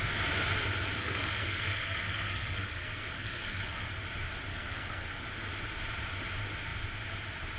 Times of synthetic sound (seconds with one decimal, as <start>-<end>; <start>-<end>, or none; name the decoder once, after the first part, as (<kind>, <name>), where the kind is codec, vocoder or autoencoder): 1.0-3.9 (codec, SNAC); 4.5-5.2